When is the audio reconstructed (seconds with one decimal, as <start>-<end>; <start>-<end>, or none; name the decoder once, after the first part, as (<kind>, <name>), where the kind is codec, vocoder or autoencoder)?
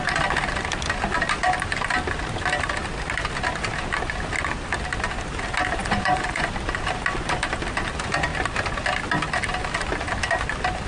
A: 5.8-6.5 (vocoder, Vocos)